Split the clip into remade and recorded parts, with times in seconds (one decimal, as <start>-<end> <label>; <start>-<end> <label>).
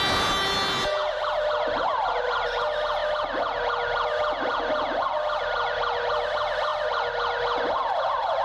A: 0.0-8.4 recorded